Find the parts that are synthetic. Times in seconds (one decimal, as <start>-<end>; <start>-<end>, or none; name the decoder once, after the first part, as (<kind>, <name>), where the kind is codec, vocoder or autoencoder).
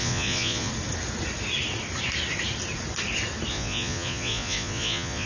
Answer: 0.0-0.7 (vocoder, Vocos); 3.5-5.3